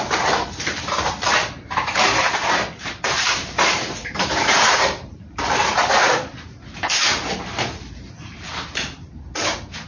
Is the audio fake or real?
fake